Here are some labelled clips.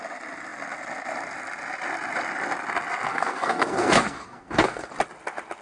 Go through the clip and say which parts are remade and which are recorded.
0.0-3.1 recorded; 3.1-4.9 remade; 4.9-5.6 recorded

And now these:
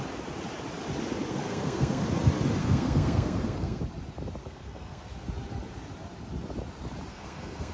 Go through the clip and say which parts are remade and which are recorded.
0.0-1.3 recorded; 1.3-2.0 remade; 2.0-2.6 recorded; 2.6-3.8 remade; 3.8-4.4 recorded; 4.4-5.1 remade; 5.1-7.1 recorded; 7.1-7.7 remade

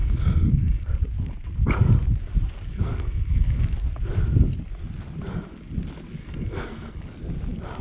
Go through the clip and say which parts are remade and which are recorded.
0.0-0.8 remade; 0.8-2.7 recorded; 2.7-3.6 remade; 3.6-6.2 recorded; 6.2-7.0 remade; 7.0-7.8 recorded

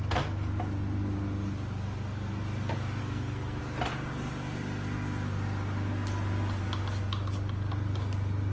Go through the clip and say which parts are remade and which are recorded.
0.0-3.0 recorded; 3.0-3.6 remade; 3.6-8.5 recorded

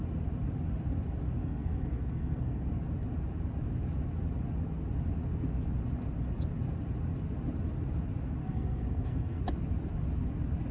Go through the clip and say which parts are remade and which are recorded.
0.0-1.4 recorded; 1.4-2.6 remade; 2.6-8.4 recorded; 8.4-9.4 remade; 9.4-10.7 recorded

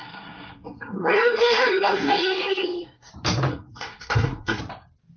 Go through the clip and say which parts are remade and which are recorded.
0.0-3.1 remade; 3.1-3.5 recorded; 3.5-4.6 remade; 4.6-5.2 recorded

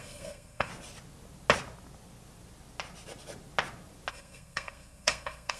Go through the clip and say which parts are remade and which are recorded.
0.0-0.7 remade; 0.7-4.1 recorded; 4.1-5.6 remade